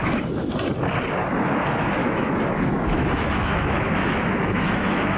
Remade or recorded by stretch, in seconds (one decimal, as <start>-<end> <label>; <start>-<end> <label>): 0.0-0.5 remade; 0.5-2.0 recorded; 2.0-5.2 remade